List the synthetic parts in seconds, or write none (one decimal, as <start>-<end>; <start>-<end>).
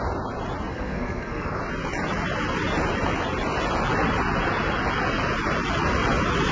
0.7-1.6